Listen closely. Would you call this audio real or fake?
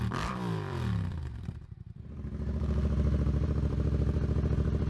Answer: fake